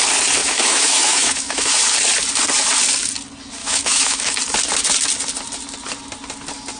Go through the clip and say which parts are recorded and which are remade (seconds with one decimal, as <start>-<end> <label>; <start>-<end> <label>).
0.0-0.4 recorded; 0.4-1.8 remade; 1.8-3.6 recorded; 3.6-4.4 remade; 4.4-6.8 recorded